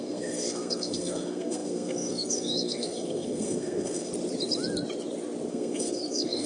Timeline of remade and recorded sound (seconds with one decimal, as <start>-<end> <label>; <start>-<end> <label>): 0.0-4.1 remade; 4.1-5.5 recorded; 5.5-6.5 remade